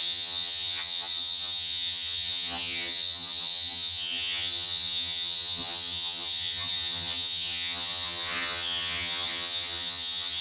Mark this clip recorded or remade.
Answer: remade